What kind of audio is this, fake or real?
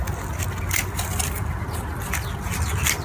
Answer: real